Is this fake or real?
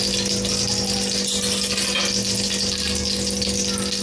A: real